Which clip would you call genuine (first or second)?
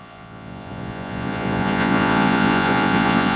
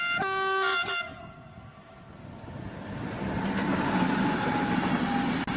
second